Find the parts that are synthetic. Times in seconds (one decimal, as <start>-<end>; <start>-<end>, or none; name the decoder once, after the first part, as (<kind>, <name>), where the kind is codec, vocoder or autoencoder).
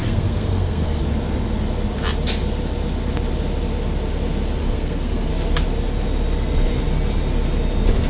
0.0-1.0 (codec, SNAC); 4.6-5.3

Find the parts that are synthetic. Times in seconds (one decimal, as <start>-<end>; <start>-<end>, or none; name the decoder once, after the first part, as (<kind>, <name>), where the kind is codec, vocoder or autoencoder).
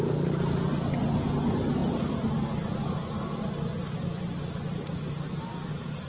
none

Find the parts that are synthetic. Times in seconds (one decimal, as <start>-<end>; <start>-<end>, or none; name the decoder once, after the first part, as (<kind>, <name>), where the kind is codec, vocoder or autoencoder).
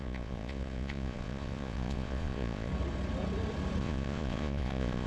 0.0-2.7 (vocoder, Vocos); 3.8-5.1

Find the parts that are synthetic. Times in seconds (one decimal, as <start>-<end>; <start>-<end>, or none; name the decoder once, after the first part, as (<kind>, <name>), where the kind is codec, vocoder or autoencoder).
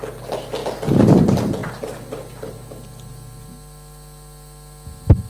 none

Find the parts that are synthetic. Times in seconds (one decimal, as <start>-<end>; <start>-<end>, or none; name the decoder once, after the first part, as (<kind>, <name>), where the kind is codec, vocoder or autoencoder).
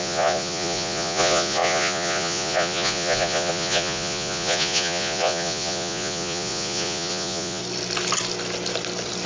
0.0-7.6 (vocoder, Vocos)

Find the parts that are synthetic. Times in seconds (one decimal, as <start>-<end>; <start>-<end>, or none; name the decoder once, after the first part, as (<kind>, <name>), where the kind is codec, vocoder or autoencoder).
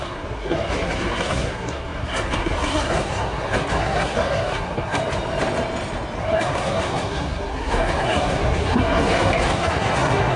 0.0-5.0 (codec, SNAC); 6.2-10.4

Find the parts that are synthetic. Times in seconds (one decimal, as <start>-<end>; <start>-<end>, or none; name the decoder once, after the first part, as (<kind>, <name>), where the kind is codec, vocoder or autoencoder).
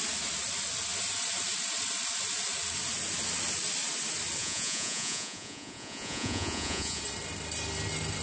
4.4-7.0 (vocoder, Vocos)